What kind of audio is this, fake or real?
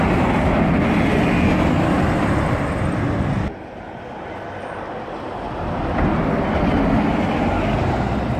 real